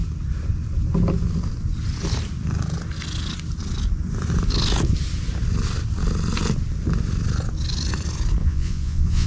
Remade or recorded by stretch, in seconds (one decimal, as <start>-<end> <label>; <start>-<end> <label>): 0.0-8.4 recorded; 8.4-9.3 remade